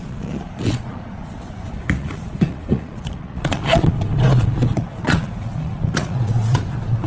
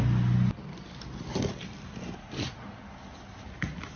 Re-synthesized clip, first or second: first